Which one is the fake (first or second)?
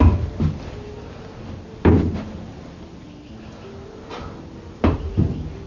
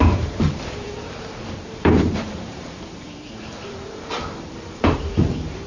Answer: second